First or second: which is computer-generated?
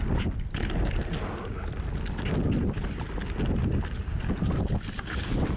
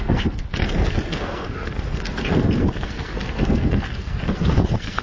second